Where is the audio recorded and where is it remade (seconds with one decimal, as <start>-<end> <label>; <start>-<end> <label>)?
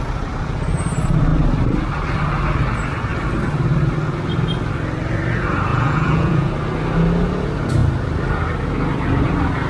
0.0-5.7 recorded; 5.7-6.5 remade; 6.5-9.7 recorded